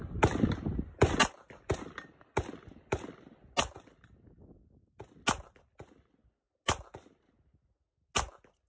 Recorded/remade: recorded